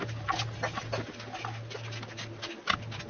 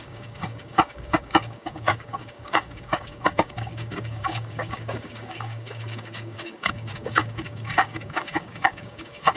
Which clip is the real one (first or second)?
first